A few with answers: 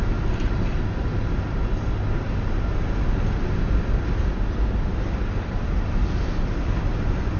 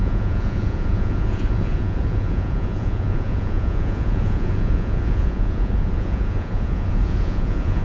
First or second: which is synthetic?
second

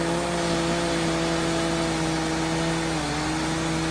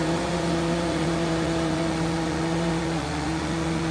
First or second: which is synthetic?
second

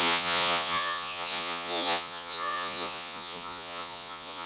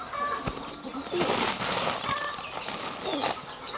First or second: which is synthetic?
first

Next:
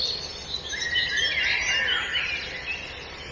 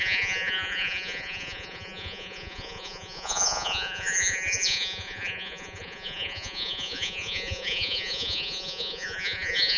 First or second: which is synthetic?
second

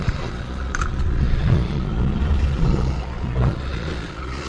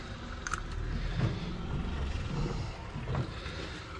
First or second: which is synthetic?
first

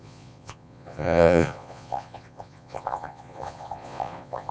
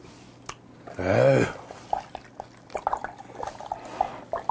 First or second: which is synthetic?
first